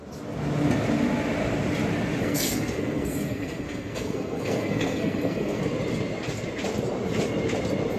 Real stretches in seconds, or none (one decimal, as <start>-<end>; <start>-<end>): 0.0-2.2; 5.6-8.0